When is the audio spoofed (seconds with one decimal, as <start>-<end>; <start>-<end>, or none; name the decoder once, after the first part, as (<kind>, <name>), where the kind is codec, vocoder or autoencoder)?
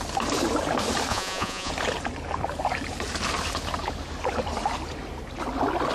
1.1-1.7 (vocoder, Vocos)